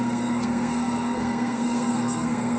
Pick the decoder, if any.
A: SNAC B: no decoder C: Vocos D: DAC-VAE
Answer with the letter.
A